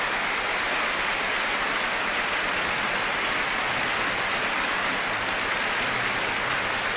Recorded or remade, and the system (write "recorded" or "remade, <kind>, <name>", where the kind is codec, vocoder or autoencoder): recorded